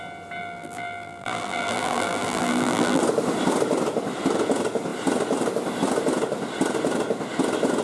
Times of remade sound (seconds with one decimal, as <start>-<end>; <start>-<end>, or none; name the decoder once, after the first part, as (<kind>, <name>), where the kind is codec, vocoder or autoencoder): 0.4-3.0 (vocoder, BigVGAN v2)